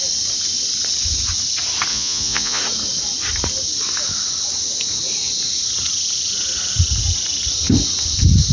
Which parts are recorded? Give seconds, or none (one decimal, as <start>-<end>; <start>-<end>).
0.0-1.9; 2.6-8.5